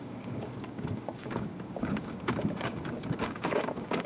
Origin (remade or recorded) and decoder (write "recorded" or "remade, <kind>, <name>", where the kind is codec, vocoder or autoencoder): remade, codec, DAC